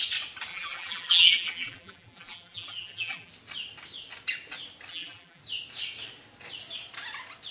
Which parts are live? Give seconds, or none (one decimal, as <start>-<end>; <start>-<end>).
0.0-0.5; 3.3-4.9; 5.4-7.5